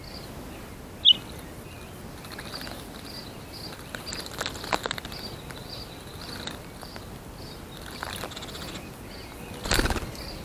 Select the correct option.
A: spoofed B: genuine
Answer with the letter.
B